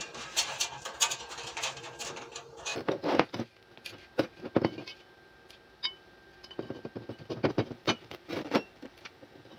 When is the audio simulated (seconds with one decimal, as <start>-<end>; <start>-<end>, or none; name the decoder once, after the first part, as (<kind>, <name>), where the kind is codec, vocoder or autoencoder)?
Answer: 0.0-2.7 (vocoder, BigVGAN v2); 7.5-9.6